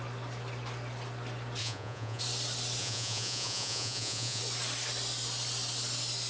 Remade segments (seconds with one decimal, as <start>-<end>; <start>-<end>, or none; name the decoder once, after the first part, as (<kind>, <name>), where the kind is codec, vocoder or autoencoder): 1.6-2.2 (vocoder, Vocos); 2.8-4.4